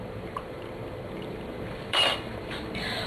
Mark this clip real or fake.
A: fake